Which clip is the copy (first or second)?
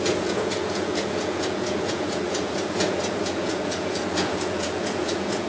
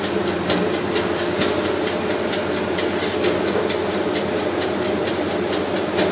first